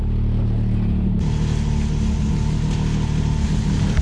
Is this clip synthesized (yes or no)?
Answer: no